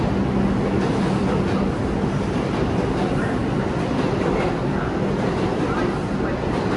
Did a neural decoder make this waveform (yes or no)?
no